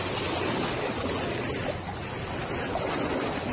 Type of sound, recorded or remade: recorded